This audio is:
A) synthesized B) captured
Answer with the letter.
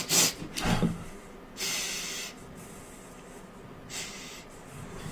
B